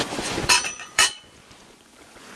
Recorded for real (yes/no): no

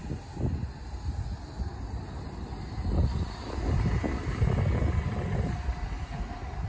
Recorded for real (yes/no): yes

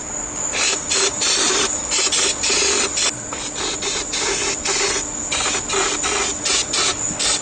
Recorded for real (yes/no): yes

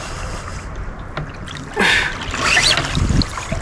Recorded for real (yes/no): yes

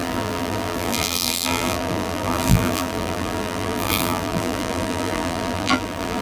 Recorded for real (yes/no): no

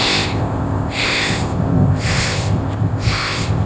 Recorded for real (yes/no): no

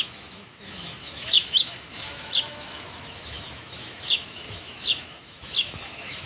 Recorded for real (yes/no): no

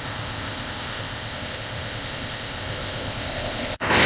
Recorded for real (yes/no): no